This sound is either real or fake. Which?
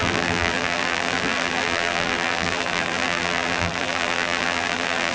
fake